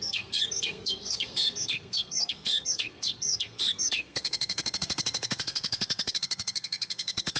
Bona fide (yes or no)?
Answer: no